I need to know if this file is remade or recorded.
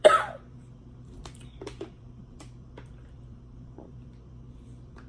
remade